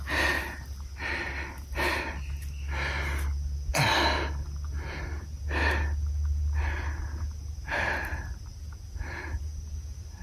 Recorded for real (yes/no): yes